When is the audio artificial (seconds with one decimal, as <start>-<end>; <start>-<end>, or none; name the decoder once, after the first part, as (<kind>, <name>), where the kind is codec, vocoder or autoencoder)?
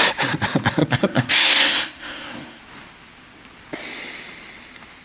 0.8-2.6 (codec, SNAC)